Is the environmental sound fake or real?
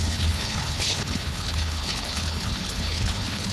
fake